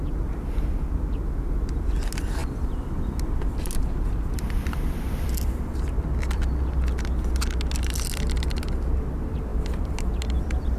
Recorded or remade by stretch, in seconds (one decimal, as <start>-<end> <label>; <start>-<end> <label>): 0.0-2.4 recorded; 2.4-6.6 remade; 6.6-10.8 recorded